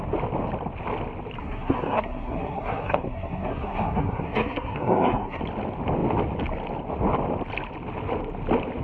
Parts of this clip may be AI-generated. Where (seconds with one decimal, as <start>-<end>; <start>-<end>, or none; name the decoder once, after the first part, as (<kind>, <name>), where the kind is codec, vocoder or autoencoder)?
1.4-5.4 (codec, SNAC)